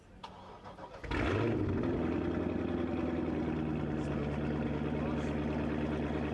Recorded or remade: recorded